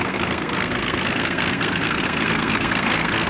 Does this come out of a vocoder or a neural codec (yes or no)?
yes